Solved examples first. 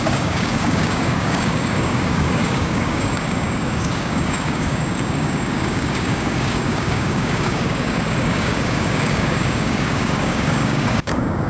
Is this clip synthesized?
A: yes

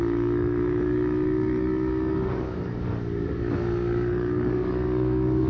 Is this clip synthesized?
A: yes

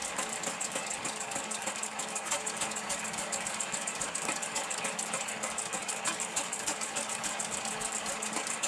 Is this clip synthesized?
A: yes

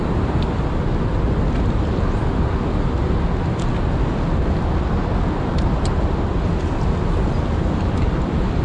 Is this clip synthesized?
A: no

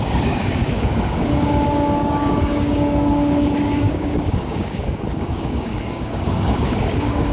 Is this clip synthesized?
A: yes